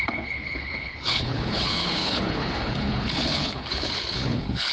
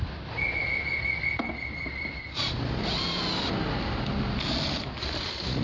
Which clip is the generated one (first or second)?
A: first